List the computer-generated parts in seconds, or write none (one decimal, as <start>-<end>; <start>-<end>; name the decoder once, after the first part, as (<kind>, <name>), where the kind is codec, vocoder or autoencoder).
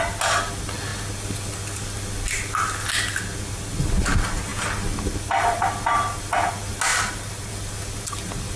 6.9-7.5 (vocoder, BigVGAN v2)